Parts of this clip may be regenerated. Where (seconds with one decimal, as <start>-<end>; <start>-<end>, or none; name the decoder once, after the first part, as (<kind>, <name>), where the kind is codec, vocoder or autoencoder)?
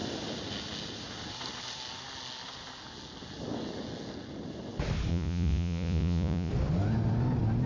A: 5.1-6.5 (vocoder, Vocos)